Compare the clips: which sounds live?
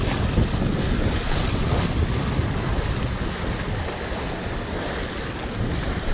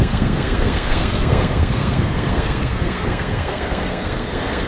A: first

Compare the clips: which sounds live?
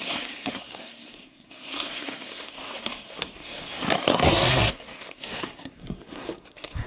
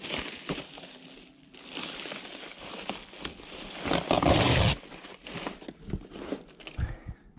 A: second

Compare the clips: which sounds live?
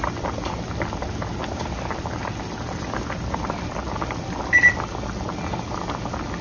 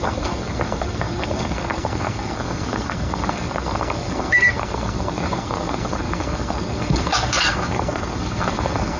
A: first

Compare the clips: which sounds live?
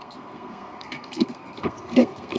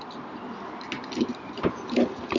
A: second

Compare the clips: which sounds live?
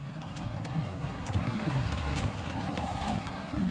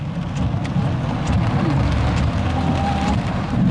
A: second